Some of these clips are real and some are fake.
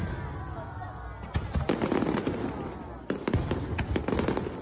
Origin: real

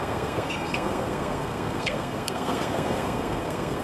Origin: fake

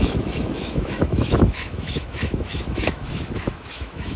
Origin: fake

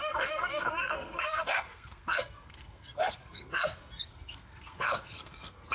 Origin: fake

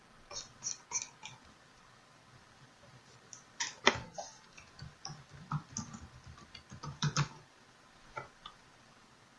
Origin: real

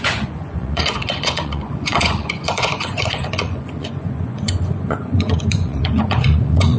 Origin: fake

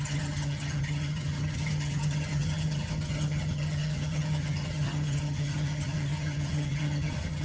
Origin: fake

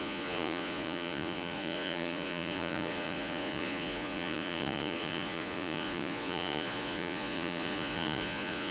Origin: fake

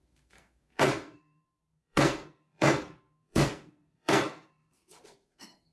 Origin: fake